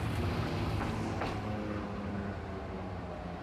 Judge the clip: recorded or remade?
recorded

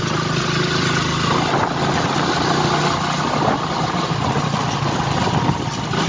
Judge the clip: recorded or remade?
recorded